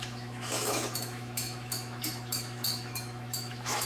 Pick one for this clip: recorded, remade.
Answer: remade